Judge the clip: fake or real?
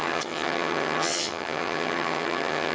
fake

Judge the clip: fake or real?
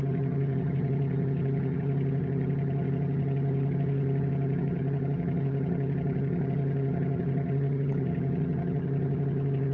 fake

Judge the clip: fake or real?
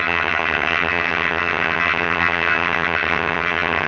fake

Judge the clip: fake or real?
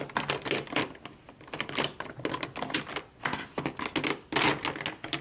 real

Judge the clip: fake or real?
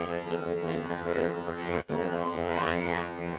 fake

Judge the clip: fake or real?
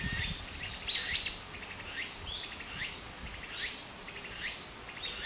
real